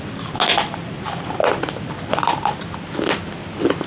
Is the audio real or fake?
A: real